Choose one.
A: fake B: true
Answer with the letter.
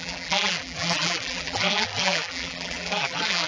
A